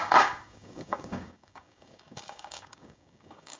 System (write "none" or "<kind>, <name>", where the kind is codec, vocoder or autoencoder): codec, DAC